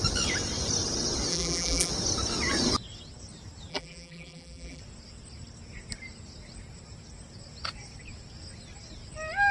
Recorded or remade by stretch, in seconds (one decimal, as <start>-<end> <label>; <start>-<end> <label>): 0.0-1.3 recorded; 1.3-1.9 remade; 1.9-3.7 recorded; 3.7-4.8 remade; 4.8-9.5 recorded

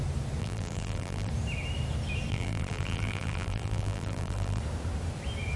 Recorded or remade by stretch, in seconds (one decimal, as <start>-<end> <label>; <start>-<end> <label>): 0.0-0.4 recorded; 0.4-1.3 remade; 1.3-2.3 recorded; 2.3-4.6 remade; 4.6-5.6 recorded

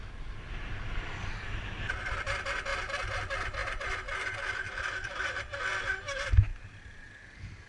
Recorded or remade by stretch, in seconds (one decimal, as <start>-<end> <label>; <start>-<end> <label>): 0.0-2.7 recorded; 2.7-3.2 remade; 3.2-7.7 recorded

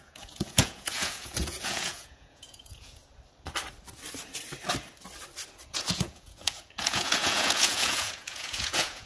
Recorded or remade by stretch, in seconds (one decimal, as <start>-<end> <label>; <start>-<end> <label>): 0.0-3.0 remade; 3.0-5.7 recorded; 5.7-9.1 remade

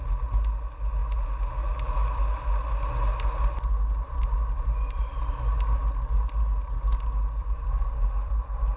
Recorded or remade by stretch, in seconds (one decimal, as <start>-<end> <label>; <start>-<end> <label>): 0.0-7.4 recorded; 7.4-8.8 remade

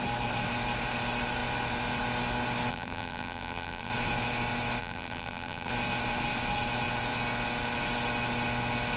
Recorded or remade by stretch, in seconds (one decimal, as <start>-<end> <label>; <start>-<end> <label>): 0.0-2.7 recorded; 2.7-3.9 remade; 3.9-4.8 recorded; 4.8-5.7 remade; 5.7-9.0 recorded

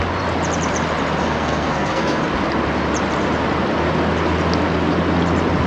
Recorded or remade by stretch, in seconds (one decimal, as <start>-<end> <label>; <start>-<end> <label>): 0.0-1.2 recorded; 1.2-2.2 remade; 2.2-5.7 recorded

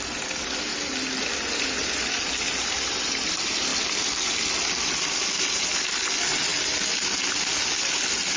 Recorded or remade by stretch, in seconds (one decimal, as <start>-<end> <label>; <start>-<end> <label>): 0.0-8.4 recorded